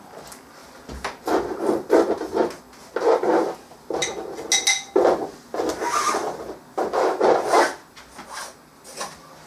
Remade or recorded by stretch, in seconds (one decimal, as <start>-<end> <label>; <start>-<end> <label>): 0.0-9.5 recorded